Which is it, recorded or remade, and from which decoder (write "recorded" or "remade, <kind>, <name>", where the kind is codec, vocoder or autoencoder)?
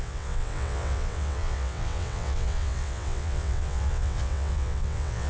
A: remade, vocoder, WaveNeXt